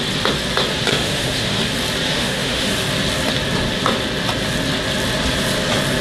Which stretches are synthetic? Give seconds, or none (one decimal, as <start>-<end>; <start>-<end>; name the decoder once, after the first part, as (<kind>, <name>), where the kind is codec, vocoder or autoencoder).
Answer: 0.9-1.6 (autoencoder, DAC-VAE); 2.1-2.7